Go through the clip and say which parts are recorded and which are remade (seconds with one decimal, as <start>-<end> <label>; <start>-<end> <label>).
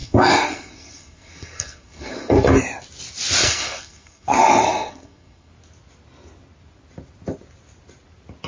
0.0-2.5 remade; 2.5-3.4 recorded; 3.4-5.5 remade; 5.5-8.5 recorded